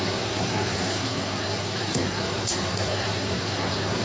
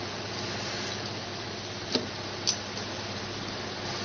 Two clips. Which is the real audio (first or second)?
second